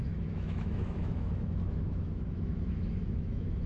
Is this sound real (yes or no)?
no